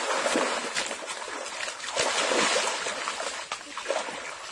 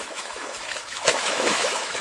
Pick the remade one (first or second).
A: second